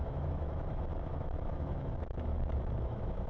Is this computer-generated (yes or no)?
yes